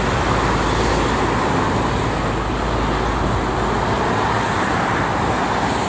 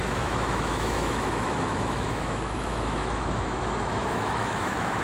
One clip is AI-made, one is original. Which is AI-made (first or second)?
second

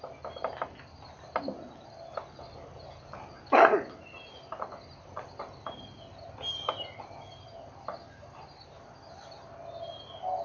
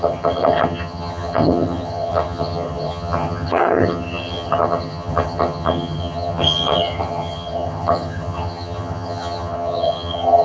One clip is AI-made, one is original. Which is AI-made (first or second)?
second